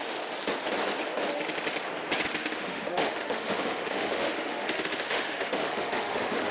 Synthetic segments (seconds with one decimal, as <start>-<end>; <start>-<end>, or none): 2.4-6.5